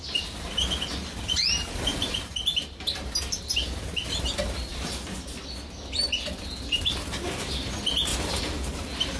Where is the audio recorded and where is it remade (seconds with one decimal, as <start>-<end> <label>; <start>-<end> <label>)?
0.0-1.9 recorded; 1.9-3.5 remade; 3.5-8.1 recorded; 8.1-9.2 remade